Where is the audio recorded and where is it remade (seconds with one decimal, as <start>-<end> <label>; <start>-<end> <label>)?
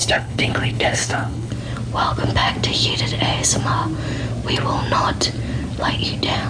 0.0-1.5 remade; 1.5-6.5 recorded